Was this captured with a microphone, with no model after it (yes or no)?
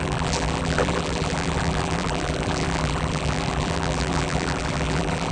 no